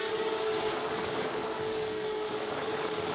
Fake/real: fake